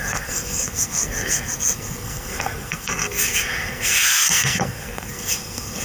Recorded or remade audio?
remade